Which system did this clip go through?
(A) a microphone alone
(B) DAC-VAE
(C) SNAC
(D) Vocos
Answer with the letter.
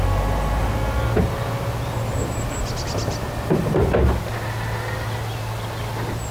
A